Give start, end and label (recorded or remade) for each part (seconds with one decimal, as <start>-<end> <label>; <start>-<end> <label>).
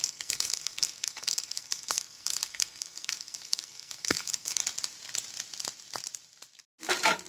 0.0-4.6 remade; 4.6-7.3 recorded